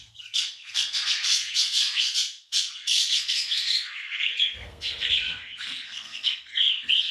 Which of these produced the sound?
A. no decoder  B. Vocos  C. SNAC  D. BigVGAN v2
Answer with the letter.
C